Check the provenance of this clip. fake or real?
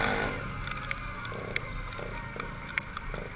real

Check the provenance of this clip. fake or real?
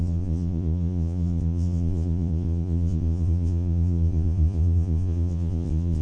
fake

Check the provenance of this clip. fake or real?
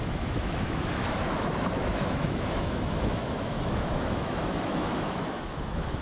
fake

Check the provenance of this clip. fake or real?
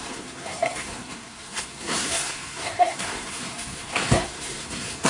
fake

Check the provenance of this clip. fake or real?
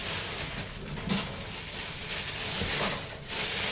real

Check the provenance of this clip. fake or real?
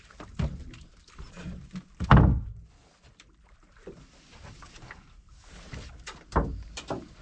fake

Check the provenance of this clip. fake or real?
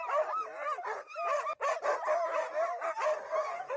real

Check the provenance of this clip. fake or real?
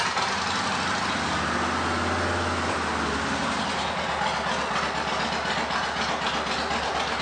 real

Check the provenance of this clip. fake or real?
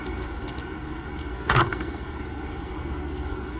fake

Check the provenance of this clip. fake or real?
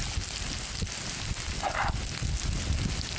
real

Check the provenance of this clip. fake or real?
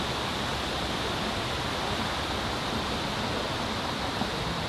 real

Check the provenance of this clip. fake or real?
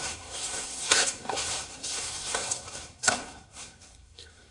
fake